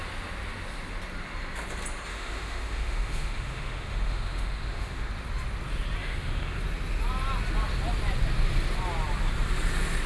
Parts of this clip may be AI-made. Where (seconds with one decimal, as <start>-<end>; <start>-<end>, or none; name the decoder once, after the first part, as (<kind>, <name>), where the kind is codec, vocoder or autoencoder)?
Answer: 2.1-5.1 (autoencoder, DAC-VAE); 6.0-6.6